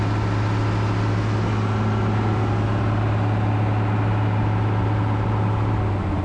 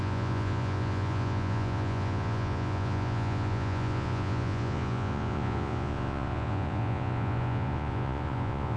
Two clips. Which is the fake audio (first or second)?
second